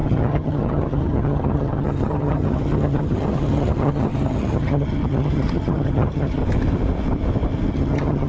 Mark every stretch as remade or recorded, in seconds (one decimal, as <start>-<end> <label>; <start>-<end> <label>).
0.0-6.4 remade; 6.4-7.7 recorded; 7.7-8.3 remade